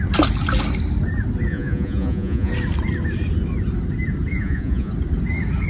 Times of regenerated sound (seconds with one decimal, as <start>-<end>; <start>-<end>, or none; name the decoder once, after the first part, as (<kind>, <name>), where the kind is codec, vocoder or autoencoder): 1.5-2.5 (vocoder, Vocos); 4.3-4.9